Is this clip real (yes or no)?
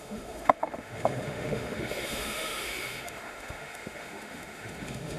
no